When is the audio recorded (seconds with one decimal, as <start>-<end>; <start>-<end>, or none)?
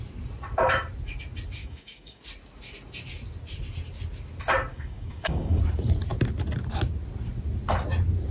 0.0-1.6; 2.2-4.7; 5.6-8.3